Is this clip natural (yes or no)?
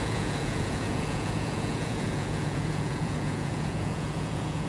no